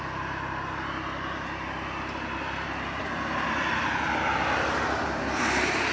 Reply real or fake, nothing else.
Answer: real